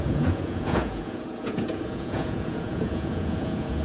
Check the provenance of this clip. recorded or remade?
remade